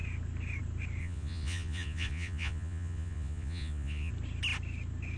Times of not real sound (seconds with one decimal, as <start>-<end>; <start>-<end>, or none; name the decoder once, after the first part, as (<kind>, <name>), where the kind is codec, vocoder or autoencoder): 1.0-4.1 (vocoder, Vocos)